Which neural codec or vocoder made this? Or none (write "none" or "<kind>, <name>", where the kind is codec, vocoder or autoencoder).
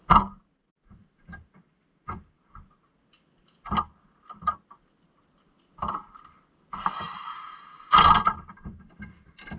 none